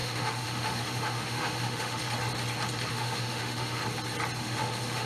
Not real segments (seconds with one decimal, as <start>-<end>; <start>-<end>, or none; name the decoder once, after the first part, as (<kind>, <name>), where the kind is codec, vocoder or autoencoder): 0.0-2.0 (autoencoder, DAC-VAE); 2.9-3.8; 4.4-5.1